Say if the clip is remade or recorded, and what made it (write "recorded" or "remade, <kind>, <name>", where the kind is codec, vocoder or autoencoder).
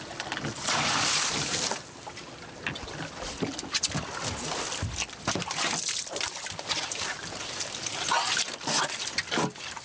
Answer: recorded